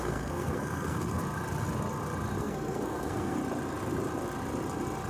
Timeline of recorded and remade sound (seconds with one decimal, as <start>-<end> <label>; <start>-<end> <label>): 0.0-1.2 remade; 1.2-2.4 recorded; 2.4-3.4 remade; 3.4-5.1 recorded